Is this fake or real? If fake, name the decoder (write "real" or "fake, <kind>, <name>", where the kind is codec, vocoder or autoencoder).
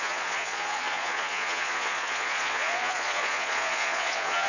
fake, vocoder, Vocos